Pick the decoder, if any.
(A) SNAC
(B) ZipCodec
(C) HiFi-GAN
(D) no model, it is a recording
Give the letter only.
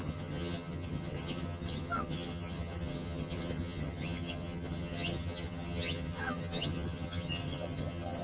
C